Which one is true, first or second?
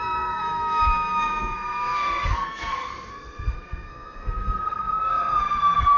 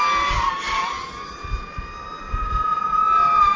second